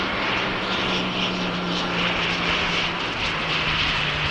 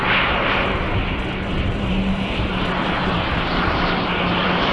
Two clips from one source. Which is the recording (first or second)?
first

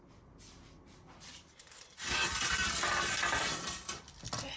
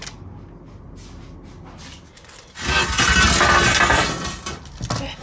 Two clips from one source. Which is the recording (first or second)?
second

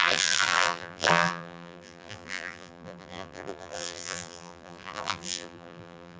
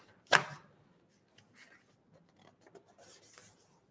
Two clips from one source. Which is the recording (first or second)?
second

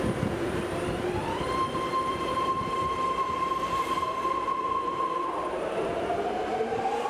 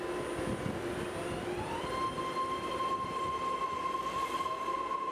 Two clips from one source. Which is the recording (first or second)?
second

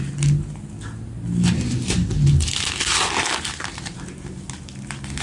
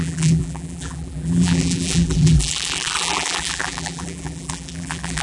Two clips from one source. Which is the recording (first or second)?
first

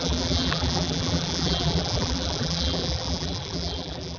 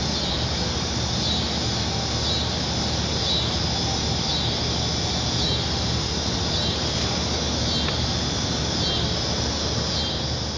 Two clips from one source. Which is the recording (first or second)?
second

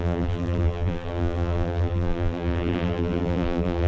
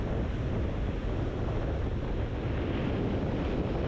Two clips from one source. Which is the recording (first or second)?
second